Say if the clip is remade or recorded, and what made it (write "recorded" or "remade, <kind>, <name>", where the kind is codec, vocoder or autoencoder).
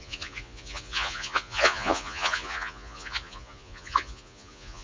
remade, vocoder, Vocos